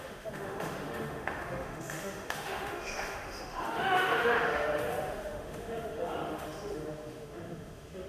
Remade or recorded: remade